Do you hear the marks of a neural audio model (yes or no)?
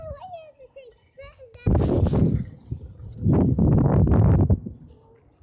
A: no